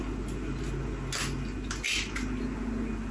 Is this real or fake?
real